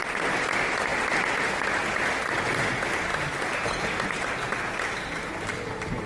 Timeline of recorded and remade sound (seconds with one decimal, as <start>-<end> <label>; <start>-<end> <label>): 0.0-6.1 recorded